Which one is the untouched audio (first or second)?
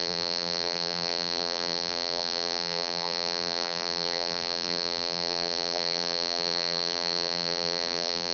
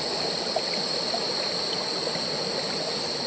second